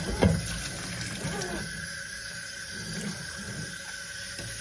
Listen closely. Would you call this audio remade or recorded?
recorded